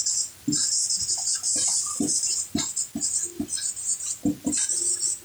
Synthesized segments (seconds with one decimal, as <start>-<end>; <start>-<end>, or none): 1.3-2.9